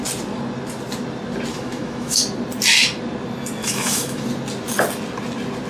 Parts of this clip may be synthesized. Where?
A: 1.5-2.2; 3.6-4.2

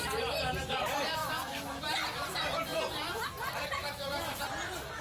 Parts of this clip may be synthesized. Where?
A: 1.2-1.8; 3.8-4.4

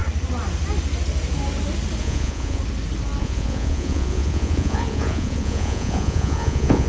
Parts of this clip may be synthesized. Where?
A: 2.0-2.6; 3.2-6.9

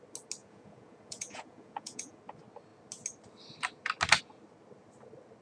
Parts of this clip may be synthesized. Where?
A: 0.4-2.2

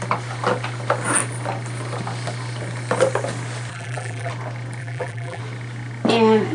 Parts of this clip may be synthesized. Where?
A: 3.7-4.3; 4.8-5.4

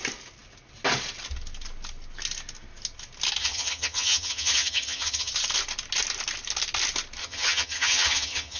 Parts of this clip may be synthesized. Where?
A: 3.4-5.3; 7.2-8.6

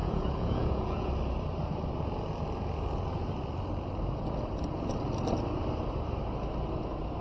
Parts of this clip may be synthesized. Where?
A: 0.0-1.1

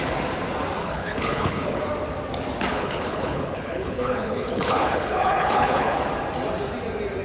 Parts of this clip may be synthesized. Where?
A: 0.8-1.8; 2.7-6.1